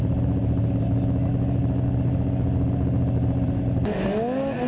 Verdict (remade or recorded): recorded